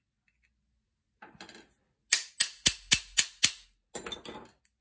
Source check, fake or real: real